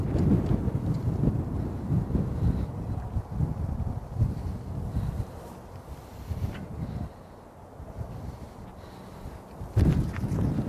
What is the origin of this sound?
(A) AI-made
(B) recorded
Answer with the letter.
B